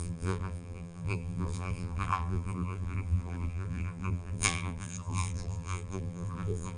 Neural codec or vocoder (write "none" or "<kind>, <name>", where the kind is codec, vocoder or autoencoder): vocoder, BigVGAN v2